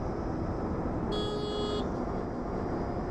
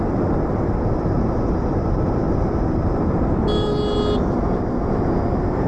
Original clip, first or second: first